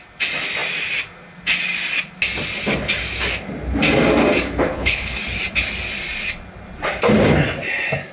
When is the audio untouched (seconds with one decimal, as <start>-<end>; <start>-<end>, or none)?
0.0-4.7; 5.2-8.1